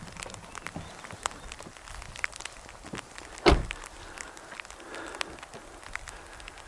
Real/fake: real